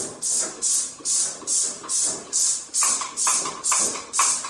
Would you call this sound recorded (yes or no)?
yes